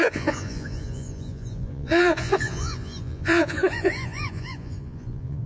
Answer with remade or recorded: remade